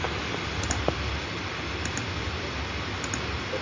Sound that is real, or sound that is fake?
real